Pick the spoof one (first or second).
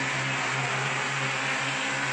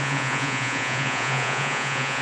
second